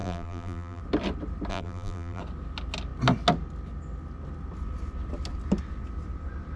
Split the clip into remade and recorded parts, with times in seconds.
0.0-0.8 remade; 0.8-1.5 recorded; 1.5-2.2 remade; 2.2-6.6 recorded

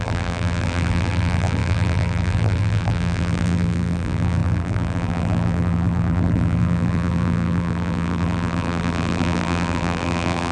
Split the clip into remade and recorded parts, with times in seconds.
0.0-10.5 remade

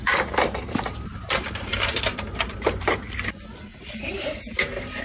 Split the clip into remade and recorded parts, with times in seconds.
0.0-3.0 remade; 3.0-3.7 recorded; 3.7-5.0 remade

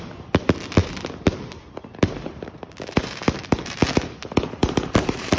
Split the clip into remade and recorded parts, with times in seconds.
0.0-0.8 recorded; 0.8-3.8 remade; 3.8-4.6 recorded; 4.6-5.4 remade

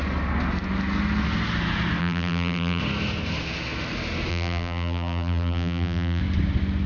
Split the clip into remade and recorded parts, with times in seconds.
0.0-2.0 recorded; 2.0-2.8 remade; 2.8-4.3 recorded; 4.3-6.2 remade; 6.2-6.9 recorded

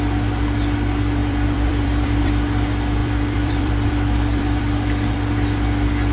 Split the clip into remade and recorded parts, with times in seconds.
0.0-1.2 recorded; 1.2-2.3 remade; 2.3-3.0 recorded; 3.0-5.3 remade; 5.3-6.1 recorded

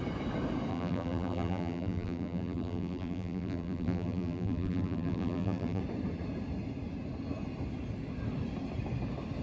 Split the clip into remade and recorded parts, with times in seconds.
0.0-0.7 recorded; 0.7-5.8 remade; 5.8-9.4 recorded

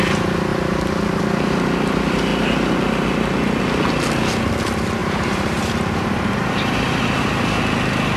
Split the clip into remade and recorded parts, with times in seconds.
0.0-5.0 recorded; 5.0-7.6 remade; 7.6-8.2 recorded